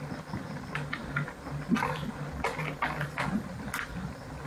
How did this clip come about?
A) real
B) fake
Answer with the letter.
A